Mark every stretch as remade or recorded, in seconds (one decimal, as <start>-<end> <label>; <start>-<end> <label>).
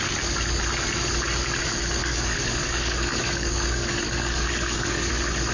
0.0-2.0 recorded; 2.0-5.1 remade; 5.1-5.5 recorded